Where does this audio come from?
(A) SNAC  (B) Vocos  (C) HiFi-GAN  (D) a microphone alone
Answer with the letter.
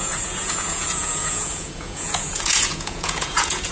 B